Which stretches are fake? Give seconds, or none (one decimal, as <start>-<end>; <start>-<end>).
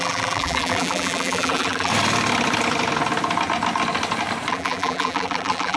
0.0-1.9; 4.5-5.8